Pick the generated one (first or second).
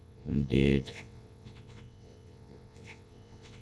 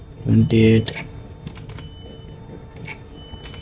first